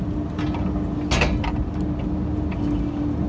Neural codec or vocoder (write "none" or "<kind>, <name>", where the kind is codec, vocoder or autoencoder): none